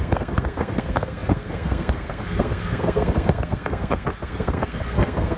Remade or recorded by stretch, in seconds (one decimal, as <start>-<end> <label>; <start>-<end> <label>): 0.0-5.4 remade